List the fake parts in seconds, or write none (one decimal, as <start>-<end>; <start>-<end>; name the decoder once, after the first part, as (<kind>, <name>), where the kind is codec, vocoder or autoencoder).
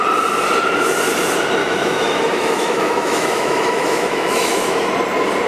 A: 1.6-4.9 (autoencoder, DAC-VAE)